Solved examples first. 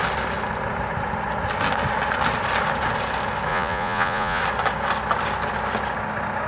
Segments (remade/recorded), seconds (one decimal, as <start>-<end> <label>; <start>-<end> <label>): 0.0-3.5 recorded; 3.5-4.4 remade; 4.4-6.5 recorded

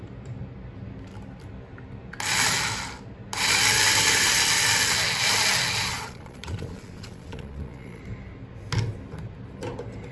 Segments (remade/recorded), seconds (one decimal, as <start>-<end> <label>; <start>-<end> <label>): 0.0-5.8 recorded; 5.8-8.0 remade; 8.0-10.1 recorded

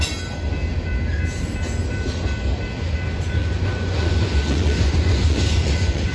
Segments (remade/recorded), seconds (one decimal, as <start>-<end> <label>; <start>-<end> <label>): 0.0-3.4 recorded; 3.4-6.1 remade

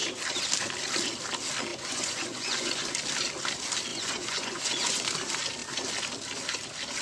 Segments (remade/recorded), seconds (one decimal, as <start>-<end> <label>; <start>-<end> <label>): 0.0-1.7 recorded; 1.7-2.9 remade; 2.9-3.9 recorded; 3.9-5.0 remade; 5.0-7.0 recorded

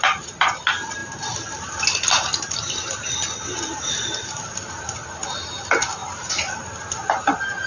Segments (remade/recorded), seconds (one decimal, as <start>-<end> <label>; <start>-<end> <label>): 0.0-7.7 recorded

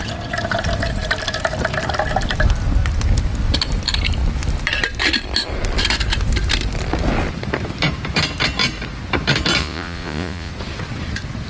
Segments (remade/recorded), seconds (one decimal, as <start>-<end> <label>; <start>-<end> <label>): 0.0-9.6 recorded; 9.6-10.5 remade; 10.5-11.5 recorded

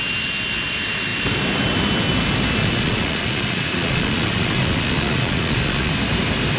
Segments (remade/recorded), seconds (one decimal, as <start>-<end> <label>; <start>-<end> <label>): 0.0-2.6 recorded; 2.6-5.9 remade; 5.9-6.6 recorded